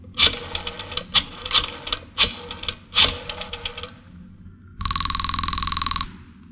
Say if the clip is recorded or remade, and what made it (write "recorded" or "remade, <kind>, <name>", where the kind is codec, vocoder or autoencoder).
recorded